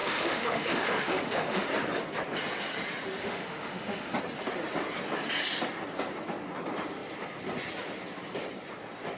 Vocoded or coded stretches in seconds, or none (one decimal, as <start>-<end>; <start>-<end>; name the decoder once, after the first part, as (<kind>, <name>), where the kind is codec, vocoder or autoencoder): 0.0-1.7 (autoencoder, DAC-VAE); 3.2-4.2